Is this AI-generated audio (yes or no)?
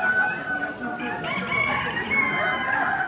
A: no